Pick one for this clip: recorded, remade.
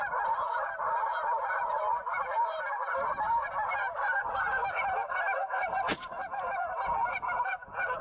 recorded